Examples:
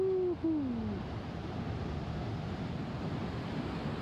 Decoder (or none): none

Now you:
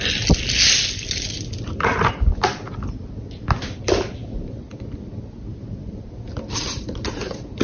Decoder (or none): none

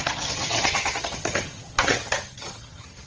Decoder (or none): vocoder, HiFi-GAN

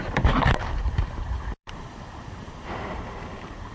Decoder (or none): vocoder, BigVGAN v2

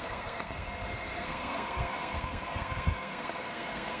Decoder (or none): codec, SNAC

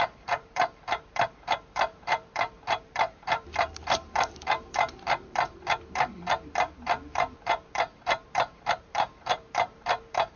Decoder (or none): vocoder, BigVGAN v2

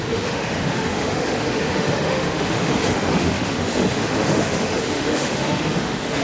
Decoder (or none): autoencoder, DAC-VAE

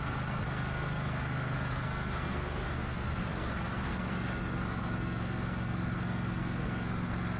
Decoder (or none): codec, SNAC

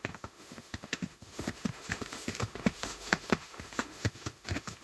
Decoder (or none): autoencoder, DAC-VAE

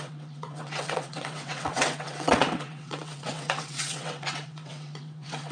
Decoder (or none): vocoder, WaveNeXt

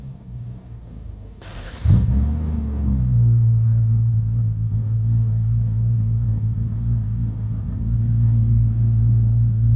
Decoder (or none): codec, DAC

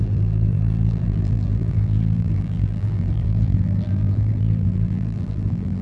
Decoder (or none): vocoder, BigVGAN v2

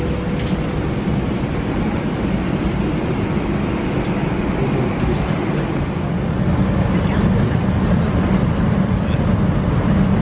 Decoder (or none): none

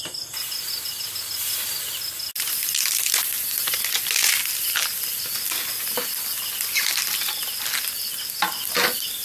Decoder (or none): none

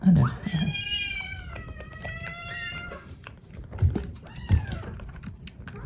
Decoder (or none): vocoder, BigVGAN v2